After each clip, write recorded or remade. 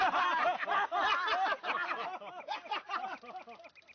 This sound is remade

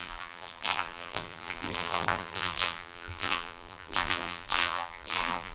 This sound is remade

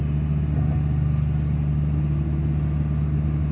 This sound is recorded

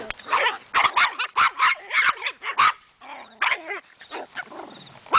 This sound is recorded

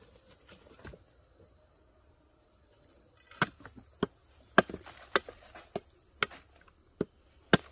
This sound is recorded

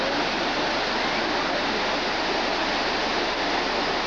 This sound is recorded